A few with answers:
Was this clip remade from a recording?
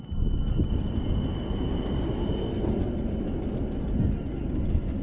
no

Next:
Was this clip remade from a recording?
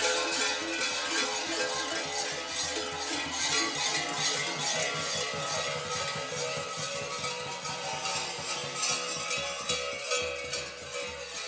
no